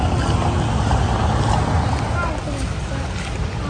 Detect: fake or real real